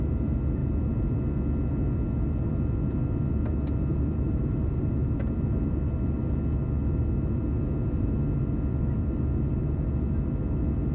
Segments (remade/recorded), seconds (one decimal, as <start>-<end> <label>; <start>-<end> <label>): 0.0-3.9 recorded; 3.9-5.2 remade; 5.2-10.9 recorded